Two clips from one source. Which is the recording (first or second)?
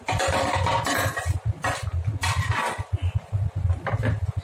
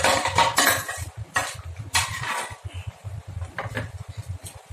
first